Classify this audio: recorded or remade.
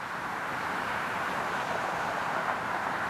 remade